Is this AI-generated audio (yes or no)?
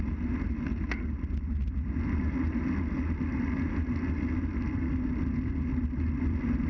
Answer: no